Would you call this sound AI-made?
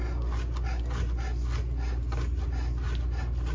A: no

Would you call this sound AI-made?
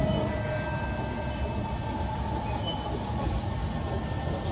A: no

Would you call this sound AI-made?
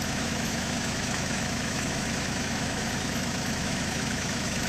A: yes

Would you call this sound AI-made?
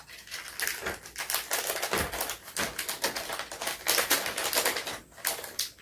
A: no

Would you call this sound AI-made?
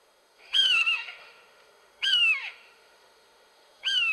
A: yes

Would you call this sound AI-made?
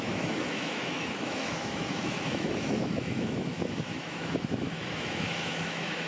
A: yes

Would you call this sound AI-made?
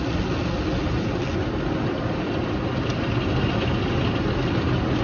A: no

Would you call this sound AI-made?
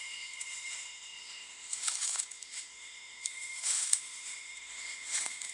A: yes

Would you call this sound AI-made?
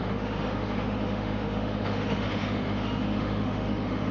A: yes